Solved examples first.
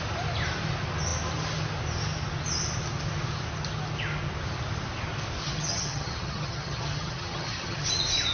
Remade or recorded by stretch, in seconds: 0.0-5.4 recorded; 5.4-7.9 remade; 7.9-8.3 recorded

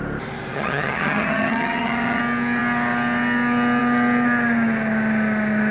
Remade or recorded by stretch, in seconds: 0.0-0.5 recorded; 0.5-2.2 remade; 2.2-5.7 recorded

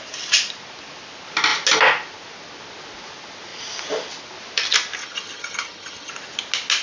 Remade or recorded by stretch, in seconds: 0.0-5.0 recorded; 5.0-6.1 remade; 6.1-6.8 recorded

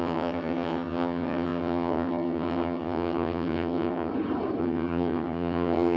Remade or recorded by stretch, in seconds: 0.0-4.1 remade; 4.1-4.6 recorded; 4.6-6.0 remade

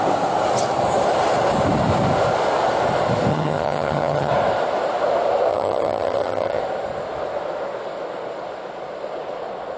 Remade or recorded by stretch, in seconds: 0.0-3.3 recorded; 3.3-4.3 remade; 4.3-5.5 recorded; 5.5-6.6 remade; 6.6-9.8 recorded

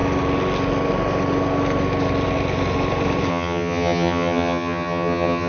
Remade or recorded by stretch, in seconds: 0.0-3.3 recorded; 3.3-5.5 remade

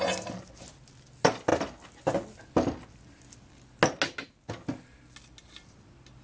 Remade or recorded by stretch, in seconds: 0.0-6.2 recorded

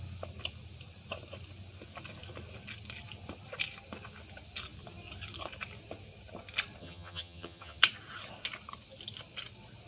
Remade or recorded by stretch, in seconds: 0.0-6.8 recorded; 6.8-7.8 remade; 7.8-9.9 recorded